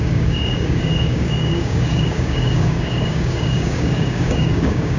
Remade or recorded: remade